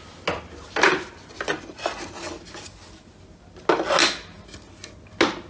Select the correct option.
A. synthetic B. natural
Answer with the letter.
B